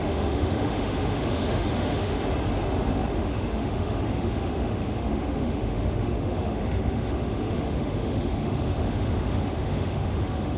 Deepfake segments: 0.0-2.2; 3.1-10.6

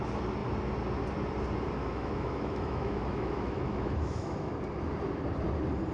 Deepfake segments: 1.8-4.5

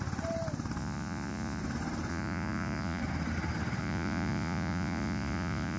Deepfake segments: 0.8-1.6; 2.1-3.0; 3.8-5.8

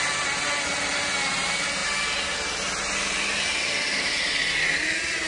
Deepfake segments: none